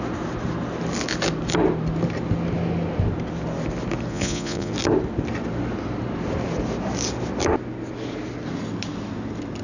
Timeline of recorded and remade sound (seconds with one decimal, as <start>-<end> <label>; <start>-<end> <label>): 0.0-4.1 recorded; 4.1-4.7 remade; 4.7-9.6 recorded